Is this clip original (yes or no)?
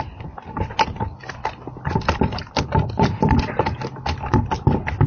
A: yes